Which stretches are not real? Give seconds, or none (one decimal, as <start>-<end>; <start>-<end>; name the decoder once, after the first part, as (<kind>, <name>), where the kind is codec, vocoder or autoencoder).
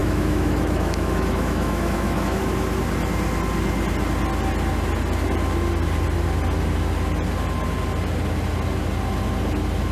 0.0-2.4 (autoencoder, DAC-VAE)